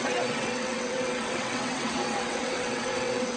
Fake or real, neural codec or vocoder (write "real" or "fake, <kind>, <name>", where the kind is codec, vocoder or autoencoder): fake, vocoder, WaveNeXt